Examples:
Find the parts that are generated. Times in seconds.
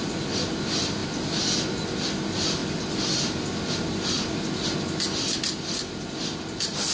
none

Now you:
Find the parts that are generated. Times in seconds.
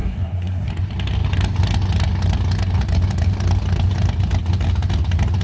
0.0-0.7 (codec, SNAC)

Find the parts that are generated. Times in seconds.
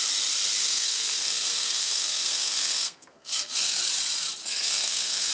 0.6-3.8 (codec, SNAC); 4.4-5.3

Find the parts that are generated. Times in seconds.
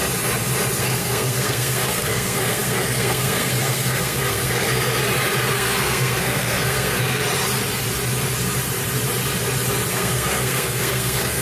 0.8-5.0 (codec, SNAC); 5.5-7.2; 9.9-11.4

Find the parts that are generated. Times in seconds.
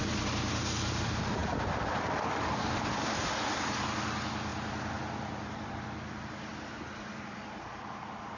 none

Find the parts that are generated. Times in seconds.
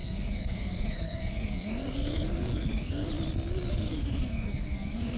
0.0-3.1 (codec, SNAC); 3.7-5.2